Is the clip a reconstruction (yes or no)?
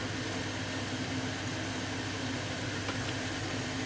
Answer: no